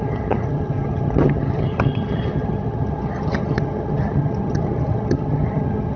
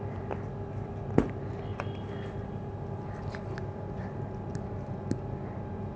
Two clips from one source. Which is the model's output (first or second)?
first